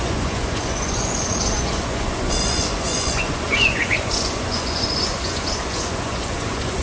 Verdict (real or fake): fake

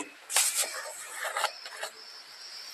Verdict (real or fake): real